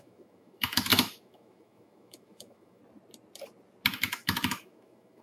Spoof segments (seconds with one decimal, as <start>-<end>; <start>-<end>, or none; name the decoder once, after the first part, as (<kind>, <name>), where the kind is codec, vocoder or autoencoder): 0.0-2.8 (autoencoder, DAC-VAE); 3.9-5.2